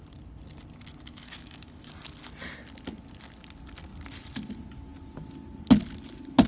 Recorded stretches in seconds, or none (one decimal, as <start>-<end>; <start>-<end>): 0.0-1.1; 1.9-6.5